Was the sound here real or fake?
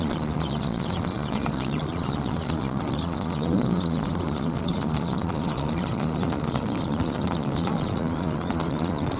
fake